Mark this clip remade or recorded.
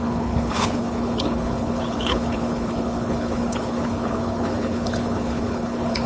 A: remade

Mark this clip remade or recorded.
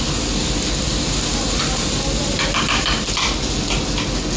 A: recorded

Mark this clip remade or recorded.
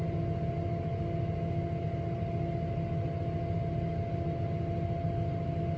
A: recorded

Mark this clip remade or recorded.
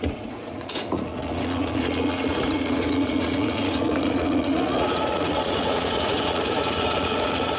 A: remade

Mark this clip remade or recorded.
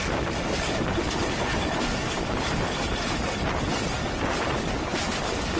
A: recorded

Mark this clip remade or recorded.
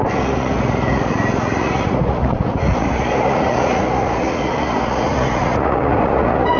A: remade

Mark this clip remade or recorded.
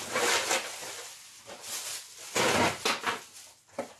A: recorded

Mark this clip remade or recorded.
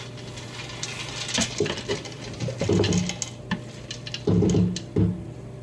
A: recorded